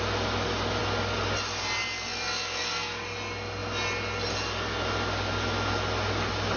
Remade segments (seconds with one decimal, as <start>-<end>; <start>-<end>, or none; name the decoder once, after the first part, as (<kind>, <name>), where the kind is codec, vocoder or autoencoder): none